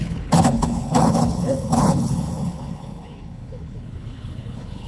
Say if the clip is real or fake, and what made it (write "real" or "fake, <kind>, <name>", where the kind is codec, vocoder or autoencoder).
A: fake, codec, HILCodec